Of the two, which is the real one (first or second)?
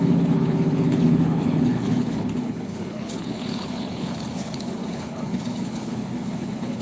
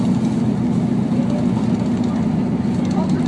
second